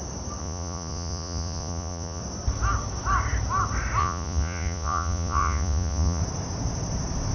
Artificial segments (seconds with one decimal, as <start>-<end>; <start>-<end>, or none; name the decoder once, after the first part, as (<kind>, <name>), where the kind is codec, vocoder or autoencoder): 0.4-2.2 (vocoder, Vocos); 4.0-6.2